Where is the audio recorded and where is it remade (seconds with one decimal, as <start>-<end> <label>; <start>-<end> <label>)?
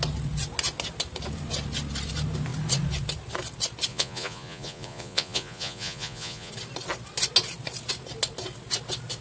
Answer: 0.0-3.9 recorded; 3.9-6.5 remade; 6.5-9.2 recorded